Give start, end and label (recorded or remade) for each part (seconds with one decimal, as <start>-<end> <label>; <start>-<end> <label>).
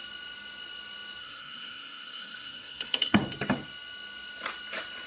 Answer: 0.0-1.2 recorded; 1.2-3.2 remade; 3.2-5.1 recorded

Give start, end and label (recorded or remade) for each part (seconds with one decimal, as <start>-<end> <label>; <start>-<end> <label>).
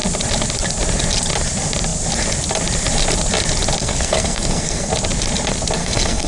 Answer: 0.0-3.8 recorded; 3.8-4.9 remade; 4.9-5.8 recorded; 5.8-6.3 remade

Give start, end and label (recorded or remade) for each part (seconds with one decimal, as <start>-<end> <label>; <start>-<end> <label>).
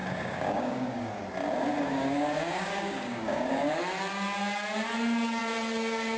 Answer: 0.0-1.2 remade; 1.2-1.7 recorded; 1.7-3.8 remade; 3.8-6.2 recorded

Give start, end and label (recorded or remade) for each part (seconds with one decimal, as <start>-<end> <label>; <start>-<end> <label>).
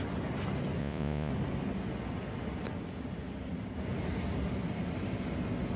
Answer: 0.0-0.8 recorded; 0.8-1.3 remade; 1.3-5.8 recorded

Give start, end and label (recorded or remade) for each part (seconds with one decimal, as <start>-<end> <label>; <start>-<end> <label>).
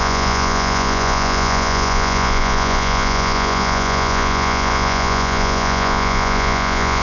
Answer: 0.0-7.0 remade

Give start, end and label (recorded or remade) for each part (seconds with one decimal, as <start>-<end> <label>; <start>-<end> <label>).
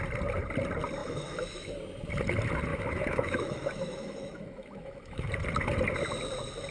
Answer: 0.0-1.0 recorded; 1.0-1.7 remade; 1.7-2.7 recorded; 2.7-5.3 remade; 5.3-6.7 recorded